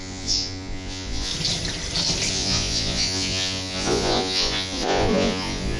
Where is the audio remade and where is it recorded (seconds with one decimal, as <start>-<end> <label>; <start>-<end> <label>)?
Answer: 0.0-1.3 remade; 1.3-2.3 recorded; 2.3-5.8 remade